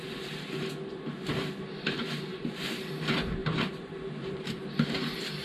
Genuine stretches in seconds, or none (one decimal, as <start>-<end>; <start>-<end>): 0.0-2.3; 2.9-3.4; 4.6-5.4